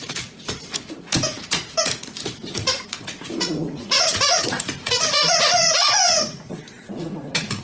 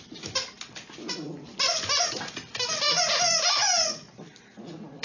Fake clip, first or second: first